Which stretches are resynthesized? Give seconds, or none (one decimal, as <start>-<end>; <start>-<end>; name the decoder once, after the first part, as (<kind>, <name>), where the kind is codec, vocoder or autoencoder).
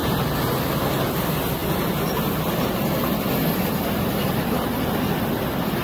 0.0-1.1 (vocoder, BigVGAN v2)